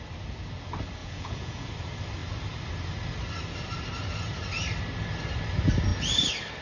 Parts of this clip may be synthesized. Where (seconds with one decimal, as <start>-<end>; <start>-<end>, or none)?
1.0-1.7